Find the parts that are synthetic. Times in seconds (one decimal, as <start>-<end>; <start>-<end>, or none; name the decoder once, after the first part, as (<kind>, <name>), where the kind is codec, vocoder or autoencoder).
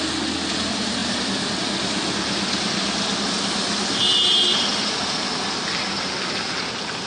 none